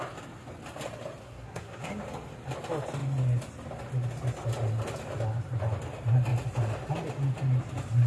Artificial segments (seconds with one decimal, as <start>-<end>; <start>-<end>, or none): 1.2-1.9